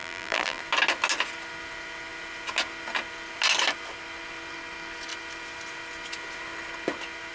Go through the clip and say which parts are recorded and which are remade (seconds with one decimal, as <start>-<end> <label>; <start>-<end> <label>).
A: 0.0-0.6 remade; 0.6-7.3 recorded